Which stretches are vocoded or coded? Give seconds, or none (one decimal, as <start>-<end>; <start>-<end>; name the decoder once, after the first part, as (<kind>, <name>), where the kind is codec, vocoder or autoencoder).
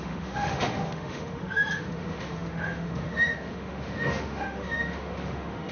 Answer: 0.0-5.7 (autoencoder, DAC-VAE)